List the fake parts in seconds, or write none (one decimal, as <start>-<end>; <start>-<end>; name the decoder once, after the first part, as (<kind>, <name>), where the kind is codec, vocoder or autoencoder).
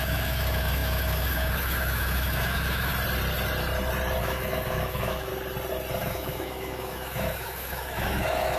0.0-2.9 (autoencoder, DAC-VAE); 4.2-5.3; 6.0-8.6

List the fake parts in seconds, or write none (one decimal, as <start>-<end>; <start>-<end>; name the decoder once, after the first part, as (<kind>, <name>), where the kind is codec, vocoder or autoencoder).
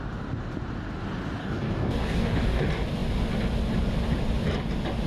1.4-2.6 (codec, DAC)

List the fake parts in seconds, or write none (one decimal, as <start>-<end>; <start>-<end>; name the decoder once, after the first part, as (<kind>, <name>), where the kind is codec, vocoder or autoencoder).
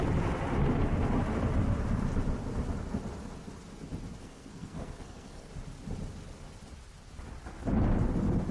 4.2-5.5 (codec, SNAC)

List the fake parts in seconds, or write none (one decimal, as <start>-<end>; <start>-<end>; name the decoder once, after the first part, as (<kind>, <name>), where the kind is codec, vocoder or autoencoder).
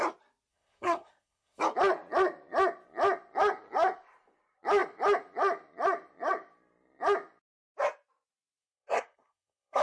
0.5-1.6 (codec, SNAC); 8.6-9.8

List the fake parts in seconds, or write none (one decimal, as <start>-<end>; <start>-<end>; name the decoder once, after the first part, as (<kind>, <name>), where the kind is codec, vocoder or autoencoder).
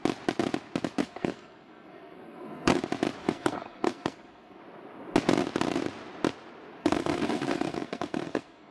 1.0-2.8 (codec, SNAC); 3.2-4.6; 6.8-8.7